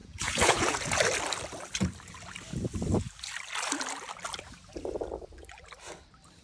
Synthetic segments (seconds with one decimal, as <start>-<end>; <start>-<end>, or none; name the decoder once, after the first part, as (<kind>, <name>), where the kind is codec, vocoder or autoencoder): 0.0-1.0 (vocoder, Vocos)